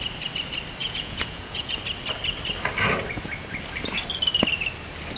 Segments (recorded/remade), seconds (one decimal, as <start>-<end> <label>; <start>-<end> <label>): 0.0-0.8 recorded; 0.8-1.8 remade; 1.8-5.2 recorded